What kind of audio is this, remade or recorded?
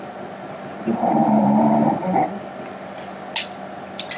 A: recorded